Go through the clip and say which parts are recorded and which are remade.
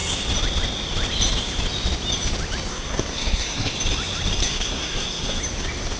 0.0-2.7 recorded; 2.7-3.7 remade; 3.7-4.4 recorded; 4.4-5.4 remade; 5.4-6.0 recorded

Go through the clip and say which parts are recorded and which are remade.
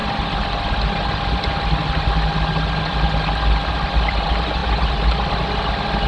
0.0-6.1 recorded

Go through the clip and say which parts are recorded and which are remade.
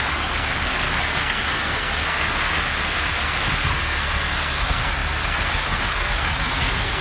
0.0-7.0 remade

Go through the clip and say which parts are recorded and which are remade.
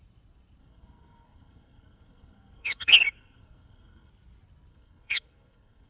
0.0-0.6 recorded; 0.6-4.1 remade; 4.1-4.7 recorded; 4.7-5.9 remade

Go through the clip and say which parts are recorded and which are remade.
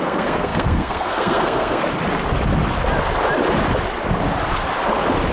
0.0-1.8 remade; 1.8-5.3 recorded